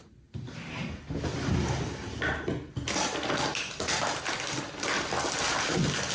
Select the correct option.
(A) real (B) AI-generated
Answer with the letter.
A